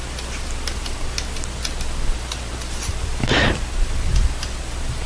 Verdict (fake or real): real